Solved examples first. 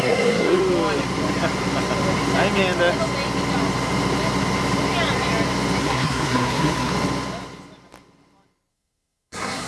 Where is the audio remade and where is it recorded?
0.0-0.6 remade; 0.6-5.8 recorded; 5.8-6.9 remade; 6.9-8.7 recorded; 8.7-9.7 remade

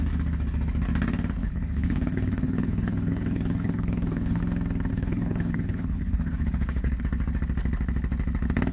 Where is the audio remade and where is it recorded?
0.0-1.4 recorded; 1.4-4.4 remade; 4.4-4.9 recorded; 4.9-7.0 remade; 7.0-8.7 recorded

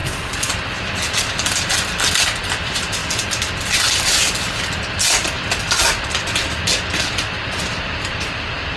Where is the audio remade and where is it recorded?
0.0-2.1 recorded; 2.1-3.0 remade; 3.0-7.8 recorded; 7.8-8.8 remade